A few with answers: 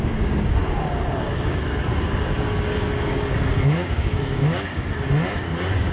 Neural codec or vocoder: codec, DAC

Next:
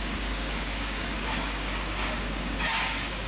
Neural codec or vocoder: codec, DAC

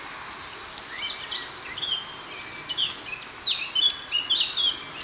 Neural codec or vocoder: none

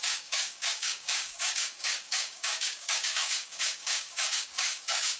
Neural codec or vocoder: codec, DAC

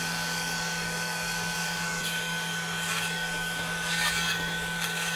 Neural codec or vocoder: codec, DAC